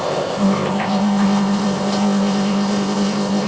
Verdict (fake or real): fake